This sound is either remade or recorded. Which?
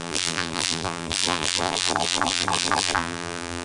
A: remade